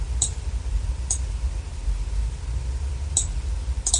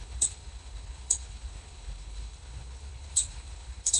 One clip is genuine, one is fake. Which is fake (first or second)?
second